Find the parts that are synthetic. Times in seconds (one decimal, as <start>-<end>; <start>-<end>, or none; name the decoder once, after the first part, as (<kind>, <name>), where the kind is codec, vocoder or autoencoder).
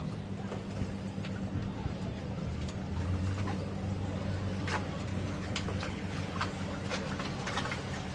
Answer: 5.1-6.2 (codec, HILCodec)